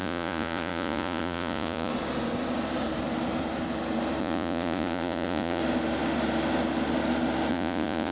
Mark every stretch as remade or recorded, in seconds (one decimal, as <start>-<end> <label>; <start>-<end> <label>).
0.0-1.9 remade; 1.9-4.2 recorded; 4.2-5.6 remade; 5.6-7.5 recorded; 7.5-8.1 remade